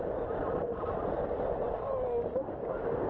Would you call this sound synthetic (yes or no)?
no